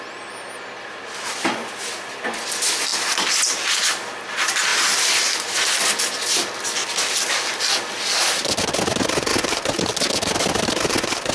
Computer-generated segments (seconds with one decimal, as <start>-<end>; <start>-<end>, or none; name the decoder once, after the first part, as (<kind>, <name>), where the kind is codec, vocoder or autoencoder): none